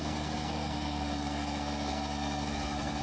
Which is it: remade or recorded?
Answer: remade